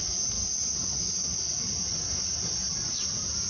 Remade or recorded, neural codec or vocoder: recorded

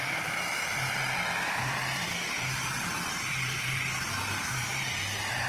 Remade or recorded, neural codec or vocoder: remade, vocoder, BigVGAN v2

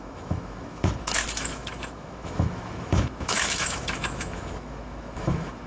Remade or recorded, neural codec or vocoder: remade, autoencoder, DAC-VAE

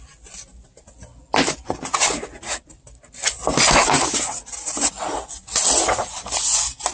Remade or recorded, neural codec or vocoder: recorded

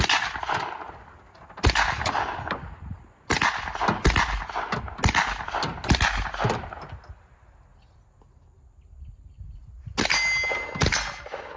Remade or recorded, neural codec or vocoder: recorded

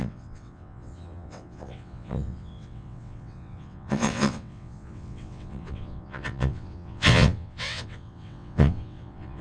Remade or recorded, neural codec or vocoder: remade, vocoder, WaveNeXt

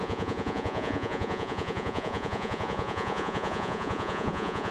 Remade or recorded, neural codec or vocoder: remade, vocoder, Vocos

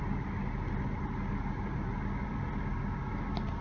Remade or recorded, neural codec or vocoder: recorded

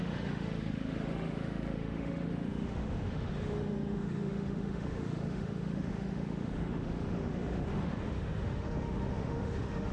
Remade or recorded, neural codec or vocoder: remade, autoencoder, DAC-VAE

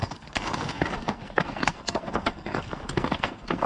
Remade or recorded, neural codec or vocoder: remade, codec, SNAC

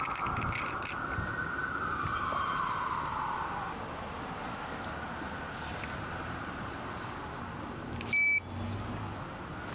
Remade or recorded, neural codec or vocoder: recorded